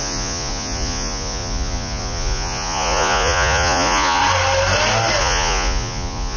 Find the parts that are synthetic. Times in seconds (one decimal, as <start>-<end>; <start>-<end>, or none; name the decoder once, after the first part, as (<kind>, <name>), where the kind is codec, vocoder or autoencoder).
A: 0.0-4.2 (vocoder, Vocos); 5.2-6.4